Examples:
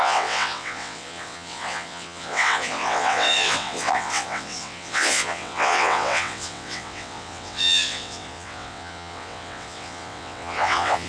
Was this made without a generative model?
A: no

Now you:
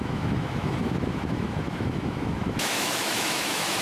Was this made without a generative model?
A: no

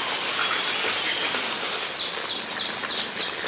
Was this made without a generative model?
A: yes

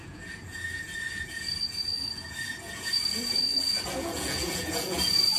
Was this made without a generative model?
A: no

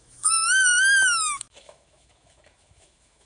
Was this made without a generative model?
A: no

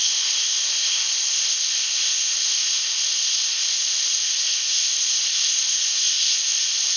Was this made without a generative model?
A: no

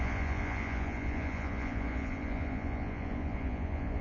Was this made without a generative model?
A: no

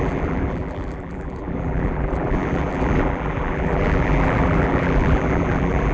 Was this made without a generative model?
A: no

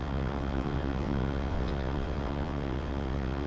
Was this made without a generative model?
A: no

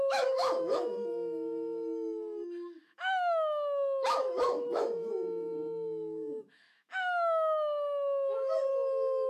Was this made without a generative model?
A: no